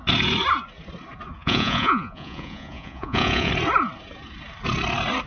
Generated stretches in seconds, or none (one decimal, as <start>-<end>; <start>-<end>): 1.4-3.5